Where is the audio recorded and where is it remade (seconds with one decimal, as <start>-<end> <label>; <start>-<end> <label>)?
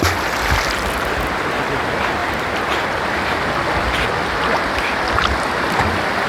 0.0-6.3 recorded